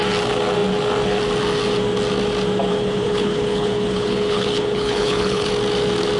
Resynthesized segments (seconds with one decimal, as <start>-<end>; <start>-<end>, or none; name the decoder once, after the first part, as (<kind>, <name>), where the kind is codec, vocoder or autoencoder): 2.7-5.5 (codec, HILCodec)